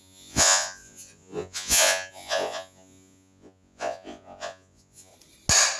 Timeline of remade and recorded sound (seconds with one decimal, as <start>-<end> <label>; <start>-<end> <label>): 0.0-5.1 remade; 5.1-5.8 recorded